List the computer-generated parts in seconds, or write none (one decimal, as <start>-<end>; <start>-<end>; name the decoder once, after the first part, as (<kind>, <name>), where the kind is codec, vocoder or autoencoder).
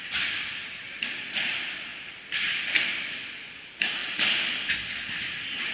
none